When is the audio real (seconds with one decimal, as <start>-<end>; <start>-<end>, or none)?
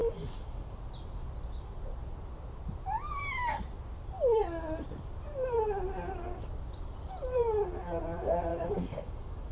0.8-8.5